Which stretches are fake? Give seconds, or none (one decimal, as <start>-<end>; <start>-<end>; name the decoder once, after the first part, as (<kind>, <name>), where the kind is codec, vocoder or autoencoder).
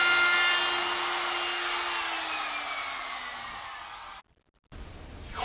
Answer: none